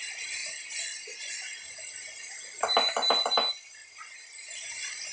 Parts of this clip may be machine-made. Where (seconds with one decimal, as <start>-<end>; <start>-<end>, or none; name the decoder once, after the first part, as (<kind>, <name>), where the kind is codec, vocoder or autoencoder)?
0.0-0.4 (vocoder, BigVGAN v2); 1.2-5.1